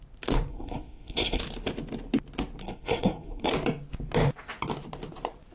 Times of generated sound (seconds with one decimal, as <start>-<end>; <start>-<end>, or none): 0.5-1.4; 2.6-3.5